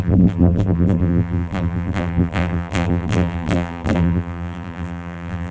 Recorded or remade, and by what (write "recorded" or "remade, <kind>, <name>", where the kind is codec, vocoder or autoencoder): remade, vocoder, BigVGAN v2